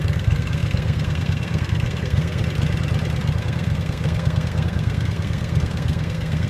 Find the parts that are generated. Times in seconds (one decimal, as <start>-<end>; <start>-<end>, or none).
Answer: 0.0-2.4; 3.4-6.5